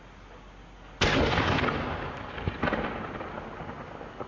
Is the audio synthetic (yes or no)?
no